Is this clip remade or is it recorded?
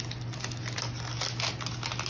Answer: recorded